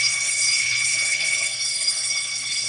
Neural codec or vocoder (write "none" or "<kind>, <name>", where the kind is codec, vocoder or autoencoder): codec, HILCodec